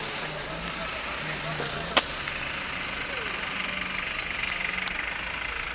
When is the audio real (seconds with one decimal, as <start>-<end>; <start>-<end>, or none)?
0.0-5.7

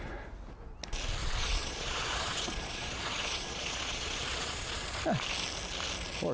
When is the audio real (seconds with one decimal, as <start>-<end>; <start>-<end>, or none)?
0.0-1.2; 5.0-6.3

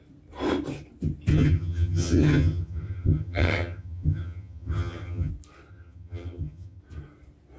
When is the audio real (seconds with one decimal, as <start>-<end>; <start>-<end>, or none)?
0.0-1.3; 5.3-5.7; 6.8-7.6

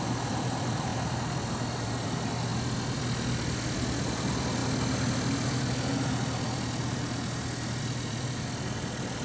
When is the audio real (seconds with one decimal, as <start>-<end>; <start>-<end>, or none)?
2.5-4.1; 4.6-7.8

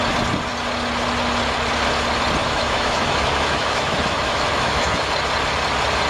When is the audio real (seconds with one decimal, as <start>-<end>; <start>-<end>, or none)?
0.0-2.4; 5.1-6.1

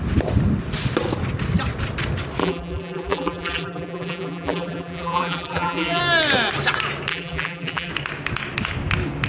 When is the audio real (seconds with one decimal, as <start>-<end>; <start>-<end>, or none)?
0.0-2.4; 6.0-7.1; 7.9-9.3